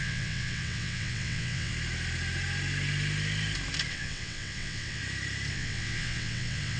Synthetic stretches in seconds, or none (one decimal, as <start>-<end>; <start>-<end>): 0.0-1.7; 3.9-5.0; 5.5-6.8